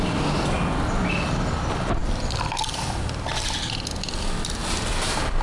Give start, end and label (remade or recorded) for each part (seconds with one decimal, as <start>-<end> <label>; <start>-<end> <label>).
0.0-2.0 recorded; 2.0-3.9 remade; 3.9-4.6 recorded; 4.6-5.4 remade